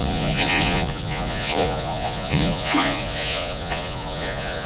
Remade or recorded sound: remade